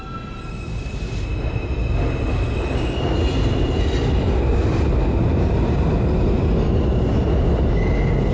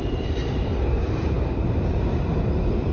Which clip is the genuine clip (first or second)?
first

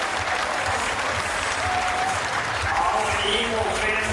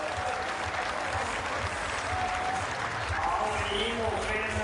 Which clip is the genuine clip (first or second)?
second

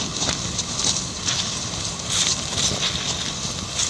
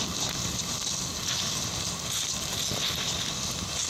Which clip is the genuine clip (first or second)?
second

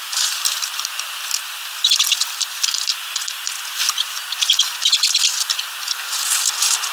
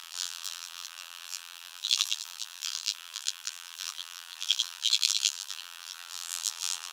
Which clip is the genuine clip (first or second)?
first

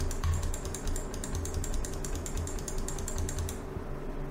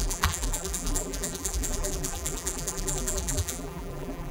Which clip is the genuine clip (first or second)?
first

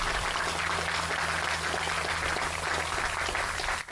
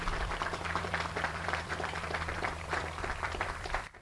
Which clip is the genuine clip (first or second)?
first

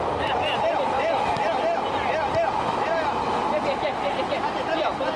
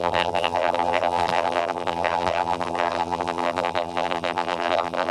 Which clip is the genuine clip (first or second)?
first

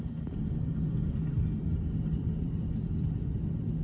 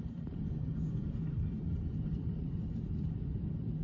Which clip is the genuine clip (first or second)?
first